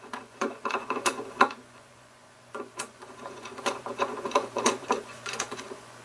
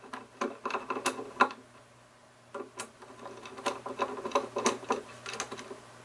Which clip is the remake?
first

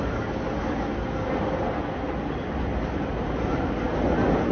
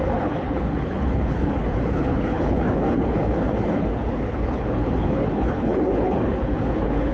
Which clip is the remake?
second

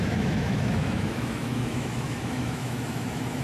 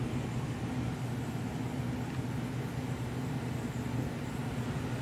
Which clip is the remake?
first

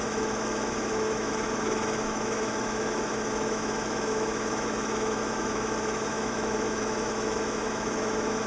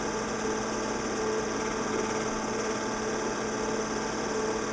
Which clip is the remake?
first